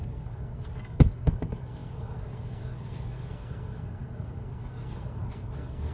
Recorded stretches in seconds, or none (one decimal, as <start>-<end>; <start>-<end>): none